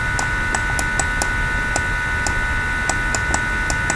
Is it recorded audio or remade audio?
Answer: recorded